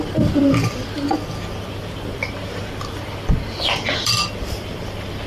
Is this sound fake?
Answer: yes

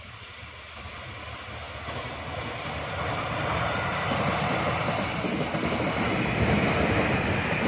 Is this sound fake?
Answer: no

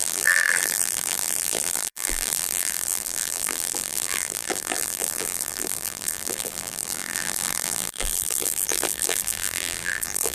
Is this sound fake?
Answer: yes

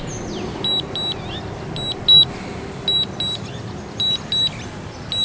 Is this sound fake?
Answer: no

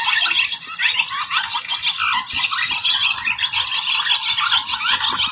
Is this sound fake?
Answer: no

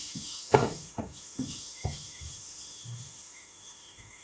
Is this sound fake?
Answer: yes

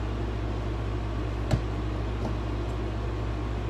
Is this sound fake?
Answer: no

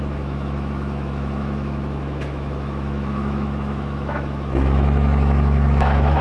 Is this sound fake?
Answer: yes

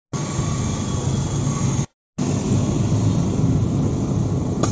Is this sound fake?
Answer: no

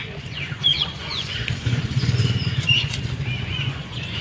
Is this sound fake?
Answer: yes